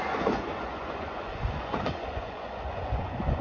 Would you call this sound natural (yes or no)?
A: no